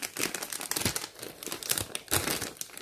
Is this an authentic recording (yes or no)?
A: yes